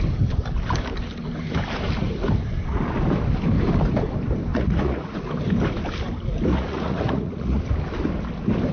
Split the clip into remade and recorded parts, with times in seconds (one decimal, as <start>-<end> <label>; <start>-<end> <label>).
0.0-4.5 recorded; 4.5-5.3 remade; 5.3-6.5 recorded; 6.5-7.6 remade; 7.6-8.7 recorded